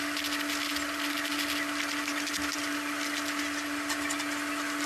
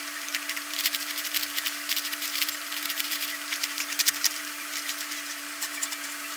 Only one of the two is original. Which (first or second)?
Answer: first